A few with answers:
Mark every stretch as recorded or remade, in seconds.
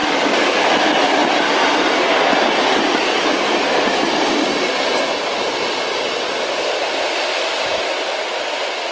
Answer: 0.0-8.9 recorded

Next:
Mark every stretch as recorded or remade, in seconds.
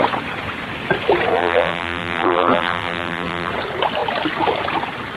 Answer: 0.0-1.3 recorded; 1.3-3.5 remade; 3.5-5.2 recorded